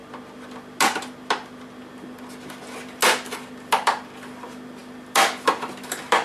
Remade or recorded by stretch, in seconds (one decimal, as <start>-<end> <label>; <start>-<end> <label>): 0.0-6.2 recorded